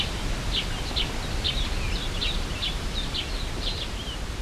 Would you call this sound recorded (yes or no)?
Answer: yes